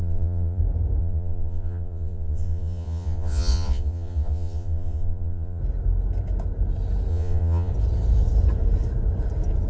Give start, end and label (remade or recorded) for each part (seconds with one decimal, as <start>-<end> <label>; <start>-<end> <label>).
0.0-0.6 remade; 0.6-1.0 recorded; 1.0-5.6 remade; 5.6-7.1 recorded; 7.1-7.7 remade; 7.7-9.7 recorded